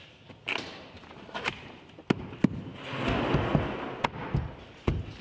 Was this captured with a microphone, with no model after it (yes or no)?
yes